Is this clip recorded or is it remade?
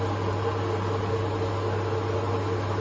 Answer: recorded